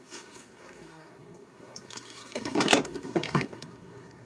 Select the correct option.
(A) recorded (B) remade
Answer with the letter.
B